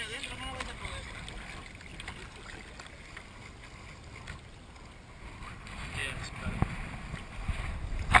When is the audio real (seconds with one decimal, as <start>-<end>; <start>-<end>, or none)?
0.0-8.2